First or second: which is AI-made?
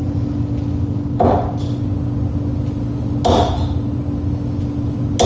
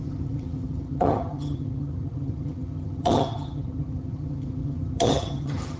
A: second